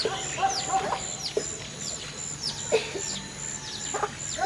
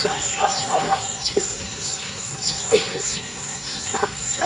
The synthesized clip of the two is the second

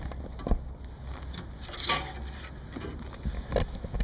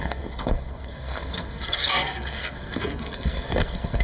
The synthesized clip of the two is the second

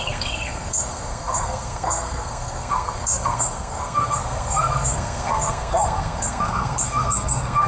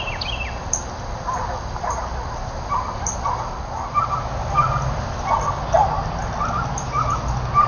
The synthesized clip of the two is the first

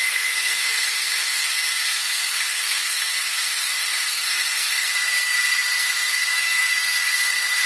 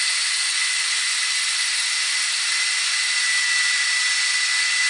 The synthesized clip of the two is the first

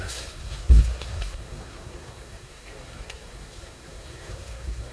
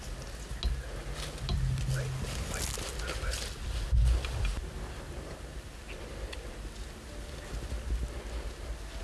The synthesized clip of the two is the first